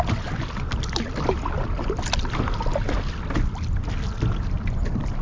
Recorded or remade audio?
recorded